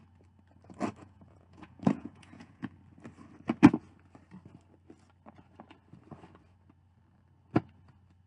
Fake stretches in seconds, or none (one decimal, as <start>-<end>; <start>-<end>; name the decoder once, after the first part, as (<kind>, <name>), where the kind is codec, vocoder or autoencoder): 1.0-2.7 (vocoder, Vocos)